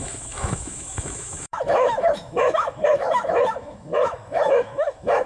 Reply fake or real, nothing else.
fake